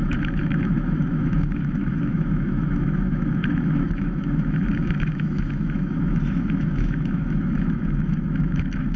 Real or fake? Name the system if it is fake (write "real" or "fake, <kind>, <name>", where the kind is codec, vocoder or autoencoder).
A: fake, autoencoder, DAC-VAE